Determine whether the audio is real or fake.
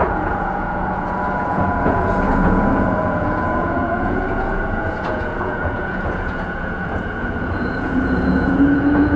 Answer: fake